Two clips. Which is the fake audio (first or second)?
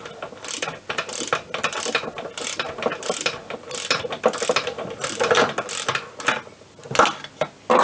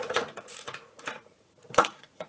second